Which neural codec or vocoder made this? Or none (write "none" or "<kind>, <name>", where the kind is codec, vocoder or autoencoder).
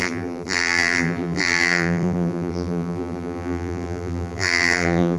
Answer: vocoder, BigVGAN v2